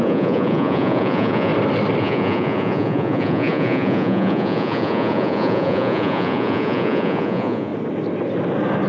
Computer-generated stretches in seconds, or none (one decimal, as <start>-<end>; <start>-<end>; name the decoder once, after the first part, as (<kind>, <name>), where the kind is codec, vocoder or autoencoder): 0.0-1.5 (vocoder, Vocos); 2.0-7.7